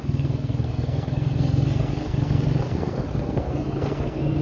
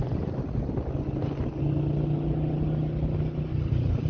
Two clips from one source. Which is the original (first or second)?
second